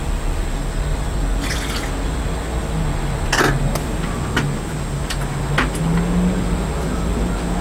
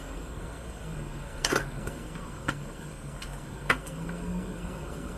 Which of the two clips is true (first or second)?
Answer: first